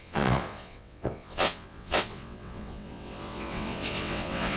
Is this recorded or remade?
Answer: remade